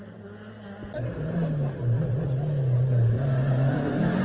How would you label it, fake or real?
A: real